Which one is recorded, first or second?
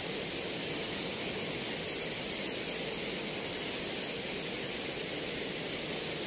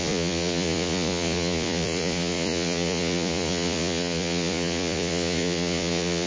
first